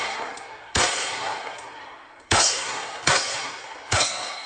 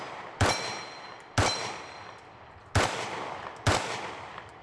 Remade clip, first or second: first